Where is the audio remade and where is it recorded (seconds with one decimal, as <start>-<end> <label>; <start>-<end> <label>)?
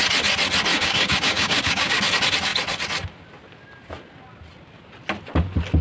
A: 0.0-0.7 recorded; 0.7-2.1 remade; 2.1-5.8 recorded